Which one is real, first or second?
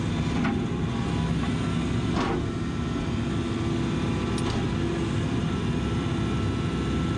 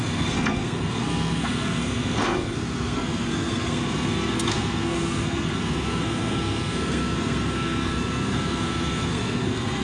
first